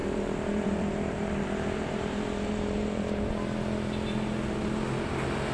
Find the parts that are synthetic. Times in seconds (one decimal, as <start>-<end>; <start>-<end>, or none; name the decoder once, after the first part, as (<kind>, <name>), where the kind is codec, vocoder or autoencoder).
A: 0.0-3.3 (vocoder, BigVGAN v2)